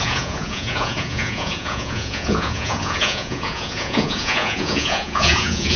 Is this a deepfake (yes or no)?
yes